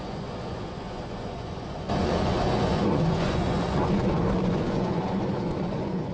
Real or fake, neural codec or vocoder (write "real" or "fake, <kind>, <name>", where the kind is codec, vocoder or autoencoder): fake, vocoder, Vocos